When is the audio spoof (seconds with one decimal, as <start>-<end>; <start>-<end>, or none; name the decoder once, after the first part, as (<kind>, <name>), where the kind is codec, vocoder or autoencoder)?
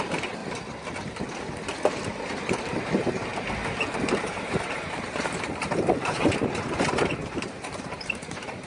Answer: 0.0-0.4 (vocoder, BigVGAN v2); 1.9-3.6; 4.1-8.7